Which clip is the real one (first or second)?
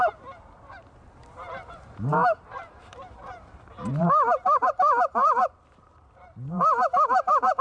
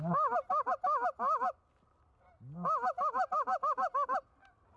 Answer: second